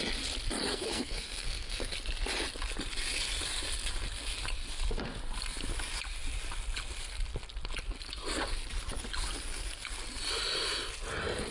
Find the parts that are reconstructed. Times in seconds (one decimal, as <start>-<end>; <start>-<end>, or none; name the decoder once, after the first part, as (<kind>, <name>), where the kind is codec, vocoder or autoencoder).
0.7-1.9 (codec, SNAC)